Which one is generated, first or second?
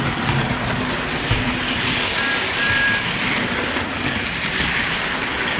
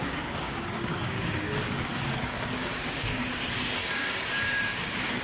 second